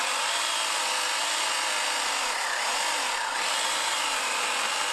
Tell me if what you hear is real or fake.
real